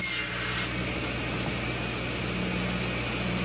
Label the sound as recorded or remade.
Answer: recorded